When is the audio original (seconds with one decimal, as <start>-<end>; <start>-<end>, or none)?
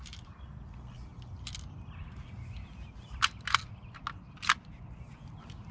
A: 0.0-5.7